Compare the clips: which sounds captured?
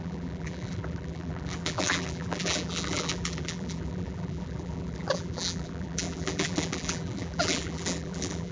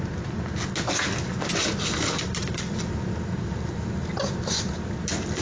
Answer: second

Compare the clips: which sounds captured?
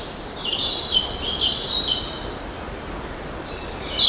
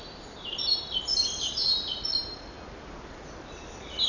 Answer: second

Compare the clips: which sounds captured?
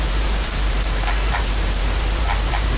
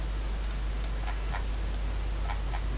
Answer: second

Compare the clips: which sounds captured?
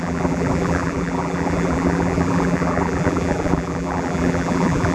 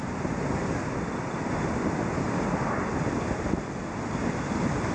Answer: second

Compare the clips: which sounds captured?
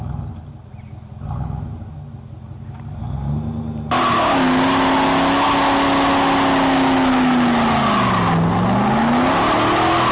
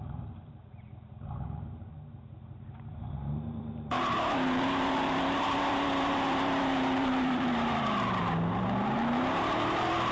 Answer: first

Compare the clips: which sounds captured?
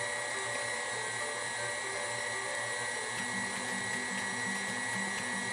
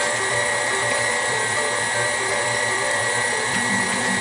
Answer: first